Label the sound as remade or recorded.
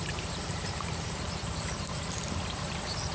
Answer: remade